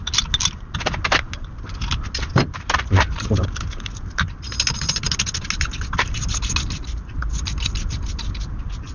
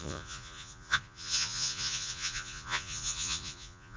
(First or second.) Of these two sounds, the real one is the first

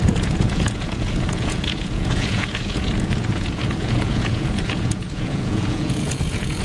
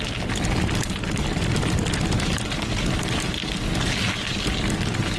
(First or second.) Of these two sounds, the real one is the second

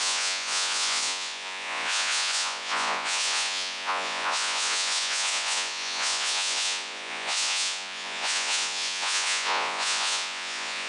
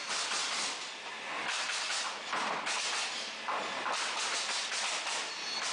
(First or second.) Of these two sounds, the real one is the second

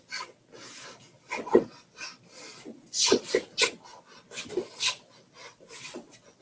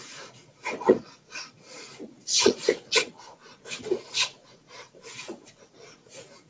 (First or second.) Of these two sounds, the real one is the first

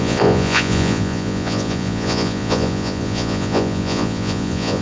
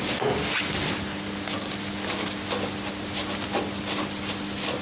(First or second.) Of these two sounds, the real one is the second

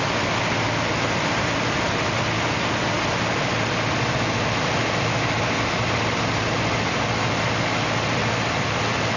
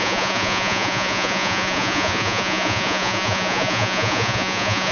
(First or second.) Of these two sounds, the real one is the first